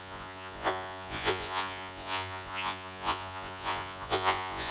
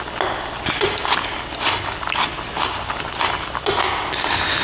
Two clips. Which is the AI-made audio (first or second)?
first